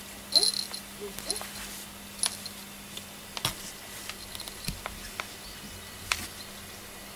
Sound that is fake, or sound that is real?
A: real